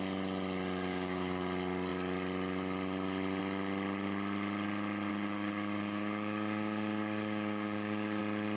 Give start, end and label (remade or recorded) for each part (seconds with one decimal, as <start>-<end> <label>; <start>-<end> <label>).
0.0-0.9 recorded; 0.9-1.4 remade; 1.4-5.1 recorded; 5.1-8.2 remade; 8.2-8.6 recorded